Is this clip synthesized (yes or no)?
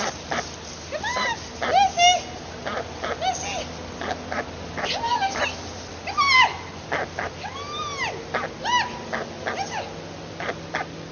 no